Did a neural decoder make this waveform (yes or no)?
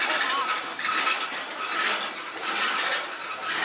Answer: yes